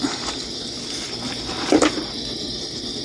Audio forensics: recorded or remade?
recorded